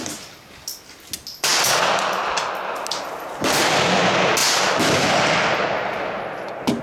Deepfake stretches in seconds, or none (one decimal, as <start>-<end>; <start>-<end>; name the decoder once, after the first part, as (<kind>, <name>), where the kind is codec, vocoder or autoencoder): none

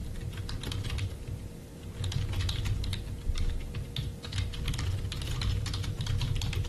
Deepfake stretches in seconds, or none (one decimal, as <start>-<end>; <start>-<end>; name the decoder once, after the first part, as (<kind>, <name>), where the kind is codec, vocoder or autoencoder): 0.0-1.7 (vocoder, BigVGAN v2); 5.2-6.7